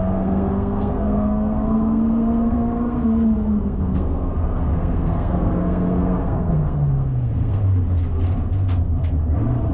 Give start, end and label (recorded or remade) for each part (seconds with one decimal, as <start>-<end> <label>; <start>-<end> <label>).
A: 0.0-7.6 remade; 7.6-9.7 recorded